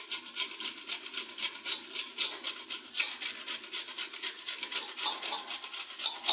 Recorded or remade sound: recorded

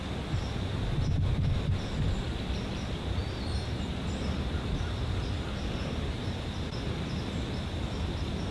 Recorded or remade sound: recorded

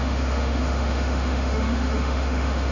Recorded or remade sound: remade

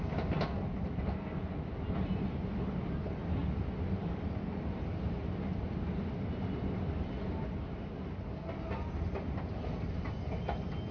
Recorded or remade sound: recorded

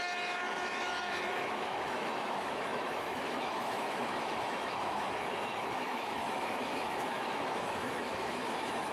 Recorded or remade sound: remade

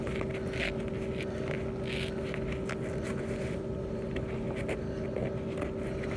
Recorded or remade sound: recorded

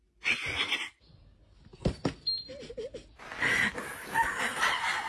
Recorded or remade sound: recorded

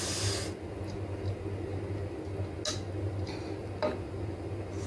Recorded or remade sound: recorded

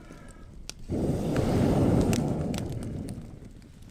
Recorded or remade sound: recorded